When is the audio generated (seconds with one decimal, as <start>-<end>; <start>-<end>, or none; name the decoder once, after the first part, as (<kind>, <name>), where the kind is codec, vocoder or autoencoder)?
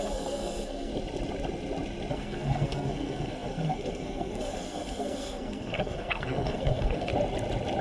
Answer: 0.0-0.9 (codec, SNAC); 2.1-7.1